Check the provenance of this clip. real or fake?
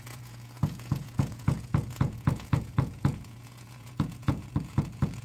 fake